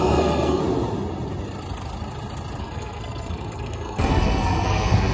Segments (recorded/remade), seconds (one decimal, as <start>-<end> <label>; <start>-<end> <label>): 0.0-0.6 remade; 0.6-2.6 recorded; 2.6-5.1 remade